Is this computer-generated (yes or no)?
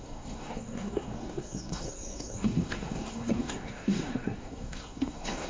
yes